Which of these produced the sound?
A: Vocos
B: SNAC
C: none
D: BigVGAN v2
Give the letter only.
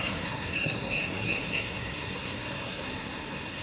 B